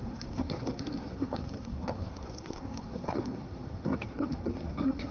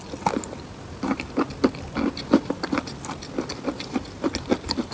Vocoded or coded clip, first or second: first